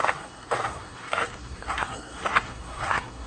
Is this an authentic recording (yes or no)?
no